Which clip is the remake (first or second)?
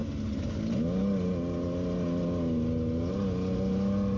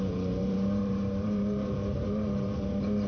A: second